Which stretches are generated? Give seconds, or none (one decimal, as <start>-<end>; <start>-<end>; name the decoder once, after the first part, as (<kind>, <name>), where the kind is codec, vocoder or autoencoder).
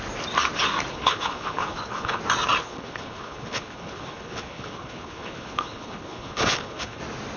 0.9-2.2 (codec, HILCodec); 2.6-7.0